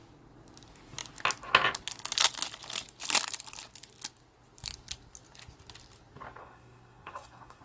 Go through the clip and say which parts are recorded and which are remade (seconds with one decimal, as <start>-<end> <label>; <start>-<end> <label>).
0.0-6.4 recorded; 6.4-7.6 remade